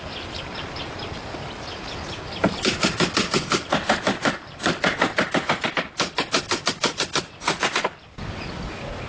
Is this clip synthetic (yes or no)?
no